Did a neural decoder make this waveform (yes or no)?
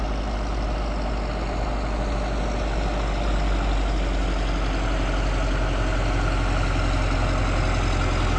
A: no